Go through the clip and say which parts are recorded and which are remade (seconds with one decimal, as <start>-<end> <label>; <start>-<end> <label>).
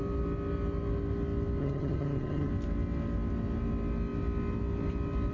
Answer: 0.0-1.6 recorded; 1.6-2.5 remade; 2.5-5.3 recorded